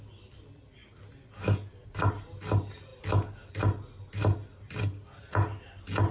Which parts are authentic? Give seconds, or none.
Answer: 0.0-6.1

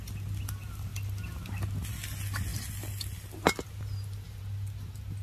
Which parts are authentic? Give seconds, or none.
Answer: 0.0-5.2

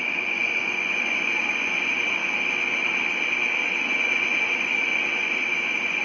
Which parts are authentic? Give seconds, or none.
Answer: 2.2-3.8

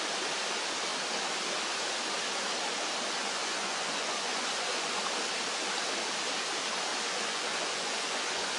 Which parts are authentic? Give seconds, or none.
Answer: 0.0-3.2; 5.0-6.9

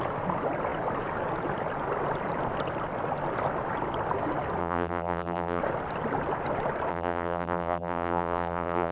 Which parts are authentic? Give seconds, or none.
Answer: 0.0-4.6; 5.6-6.9

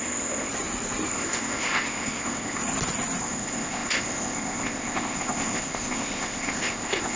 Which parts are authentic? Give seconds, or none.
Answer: 0.5-1.1; 2.6-3.2